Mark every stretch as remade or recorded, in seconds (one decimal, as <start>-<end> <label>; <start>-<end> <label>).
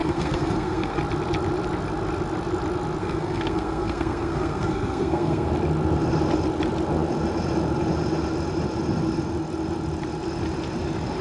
0.0-1.0 remade; 1.0-3.0 recorded; 3.0-5.5 remade; 5.5-11.2 recorded